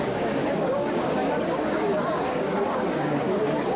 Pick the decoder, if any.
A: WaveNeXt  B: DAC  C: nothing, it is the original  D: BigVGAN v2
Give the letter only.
B